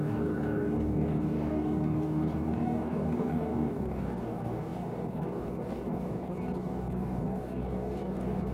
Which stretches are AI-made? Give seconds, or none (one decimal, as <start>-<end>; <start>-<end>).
0.0-8.5